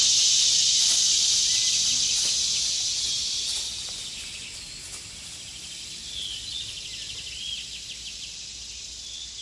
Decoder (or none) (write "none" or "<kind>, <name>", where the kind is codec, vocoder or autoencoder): none